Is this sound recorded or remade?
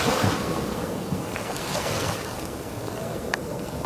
remade